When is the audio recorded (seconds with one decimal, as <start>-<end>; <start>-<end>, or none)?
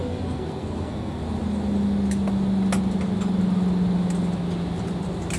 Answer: 1.2-5.4